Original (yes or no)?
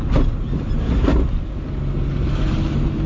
yes